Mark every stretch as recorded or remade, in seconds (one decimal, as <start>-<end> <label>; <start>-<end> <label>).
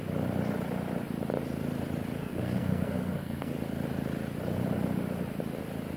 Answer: 0.0-2.2 recorded; 2.2-3.5 remade; 3.5-6.0 recorded